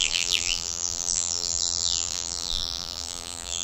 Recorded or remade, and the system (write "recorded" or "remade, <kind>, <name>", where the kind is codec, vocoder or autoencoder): remade, vocoder, BigVGAN v2